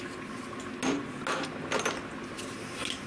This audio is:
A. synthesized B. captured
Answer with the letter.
B